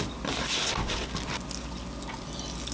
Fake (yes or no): no